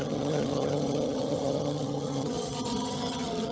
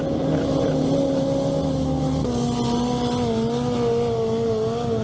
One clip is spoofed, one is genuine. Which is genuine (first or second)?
second